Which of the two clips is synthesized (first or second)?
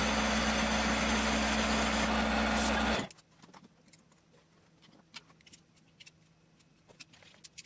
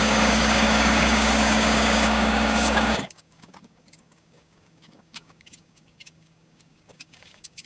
second